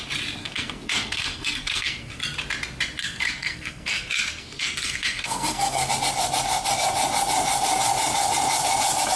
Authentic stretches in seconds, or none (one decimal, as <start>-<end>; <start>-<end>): 0.0-0.4; 2.2-3.0; 5.9-9.2